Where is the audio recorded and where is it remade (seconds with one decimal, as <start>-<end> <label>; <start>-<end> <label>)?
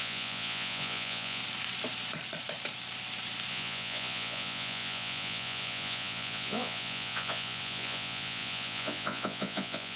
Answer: 0.0-1.4 remade; 1.4-3.5 recorded; 3.5-10.0 remade